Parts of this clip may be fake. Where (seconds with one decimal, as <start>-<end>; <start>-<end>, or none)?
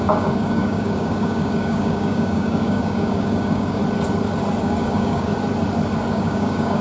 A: 0.0-3.8; 4.6-5.3; 6.1-6.8